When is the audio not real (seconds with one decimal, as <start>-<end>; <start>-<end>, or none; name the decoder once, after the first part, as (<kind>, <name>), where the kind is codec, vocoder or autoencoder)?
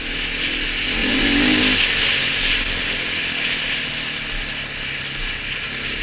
1.0-1.6 (vocoder, BigVGAN v2)